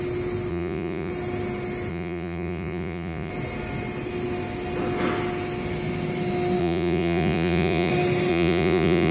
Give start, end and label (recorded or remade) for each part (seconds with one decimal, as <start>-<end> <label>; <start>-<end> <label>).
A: 0.0-0.5 recorded; 0.5-1.1 remade; 1.1-1.9 recorded; 1.9-3.3 remade; 3.3-6.6 recorded; 6.6-7.9 remade; 7.9-8.3 recorded; 8.3-9.1 remade